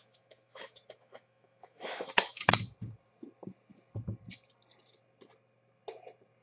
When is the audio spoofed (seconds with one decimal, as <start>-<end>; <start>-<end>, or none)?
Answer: 0.0-2.5